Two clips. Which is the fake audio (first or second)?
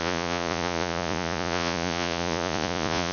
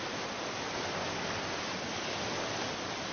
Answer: first